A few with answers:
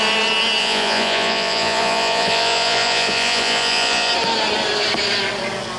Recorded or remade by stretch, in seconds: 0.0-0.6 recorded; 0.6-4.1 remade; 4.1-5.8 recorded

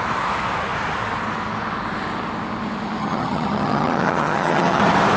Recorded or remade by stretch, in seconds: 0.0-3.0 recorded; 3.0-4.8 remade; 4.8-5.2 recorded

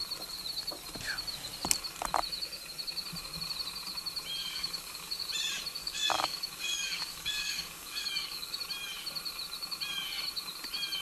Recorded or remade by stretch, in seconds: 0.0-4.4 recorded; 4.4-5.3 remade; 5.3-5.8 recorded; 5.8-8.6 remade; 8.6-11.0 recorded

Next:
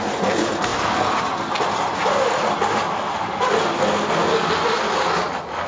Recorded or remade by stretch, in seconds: 0.0-5.7 recorded